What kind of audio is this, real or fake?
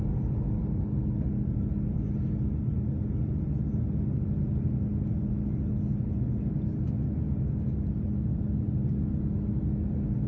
real